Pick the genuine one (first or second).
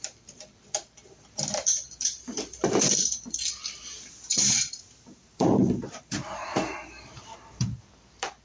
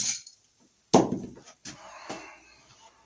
second